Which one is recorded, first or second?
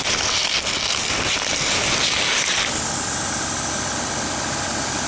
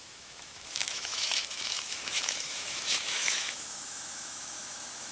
first